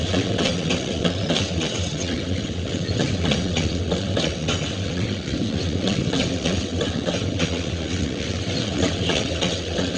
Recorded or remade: remade